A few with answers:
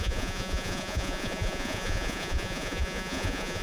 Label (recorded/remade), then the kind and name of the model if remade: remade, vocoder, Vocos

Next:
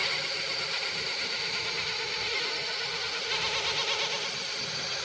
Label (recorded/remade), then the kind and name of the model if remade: recorded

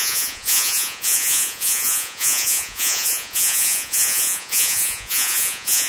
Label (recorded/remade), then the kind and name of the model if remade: remade, vocoder, Vocos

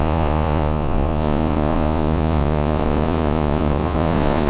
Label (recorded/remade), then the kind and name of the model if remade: remade, vocoder, Vocos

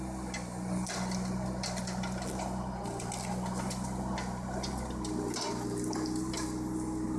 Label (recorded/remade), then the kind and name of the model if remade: recorded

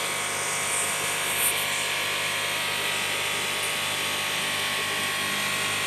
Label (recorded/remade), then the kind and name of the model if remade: recorded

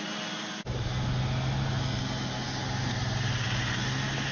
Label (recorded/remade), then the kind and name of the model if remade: recorded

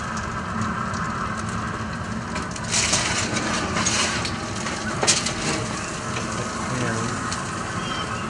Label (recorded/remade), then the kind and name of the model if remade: recorded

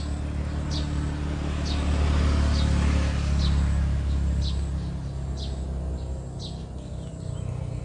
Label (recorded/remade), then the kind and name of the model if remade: recorded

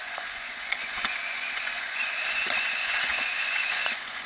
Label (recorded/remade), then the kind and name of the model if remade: remade, vocoder, Vocos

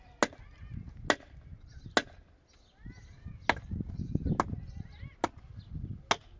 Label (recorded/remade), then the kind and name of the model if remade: recorded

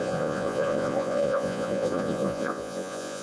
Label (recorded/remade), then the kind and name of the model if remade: remade, vocoder, Vocos